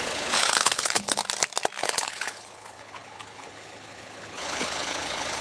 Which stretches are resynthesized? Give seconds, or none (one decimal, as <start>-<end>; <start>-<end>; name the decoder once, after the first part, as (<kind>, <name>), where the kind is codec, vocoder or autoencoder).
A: 0.0-1.2 (codec, HILCodec); 1.8-5.4

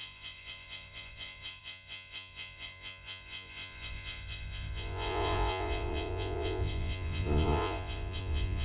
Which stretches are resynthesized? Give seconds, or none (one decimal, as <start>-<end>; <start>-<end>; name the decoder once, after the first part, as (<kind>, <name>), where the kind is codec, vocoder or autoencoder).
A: 0.0-8.6 (vocoder, Vocos)

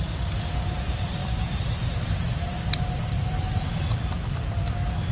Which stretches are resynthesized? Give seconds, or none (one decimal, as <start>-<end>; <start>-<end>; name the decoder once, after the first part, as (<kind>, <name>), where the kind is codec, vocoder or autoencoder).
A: none

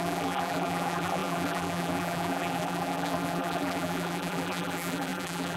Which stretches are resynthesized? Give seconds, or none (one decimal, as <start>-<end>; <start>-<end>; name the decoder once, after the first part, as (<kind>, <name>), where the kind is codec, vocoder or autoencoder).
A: 0.0-5.6 (vocoder, BigVGAN v2)

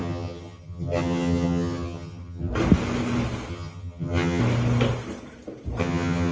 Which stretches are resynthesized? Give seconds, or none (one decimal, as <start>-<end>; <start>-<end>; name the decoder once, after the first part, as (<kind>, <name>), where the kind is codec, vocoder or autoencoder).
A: 0.0-2.5 (vocoder, HiFi-GAN); 3.5-4.4; 5.8-6.3

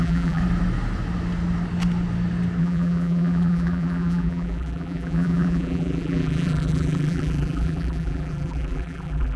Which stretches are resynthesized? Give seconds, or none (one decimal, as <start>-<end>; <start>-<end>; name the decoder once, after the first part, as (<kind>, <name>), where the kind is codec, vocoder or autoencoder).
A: 0.0-0.4 (vocoder, BigVGAN v2); 2.6-9.4